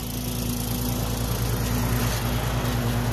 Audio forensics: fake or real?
real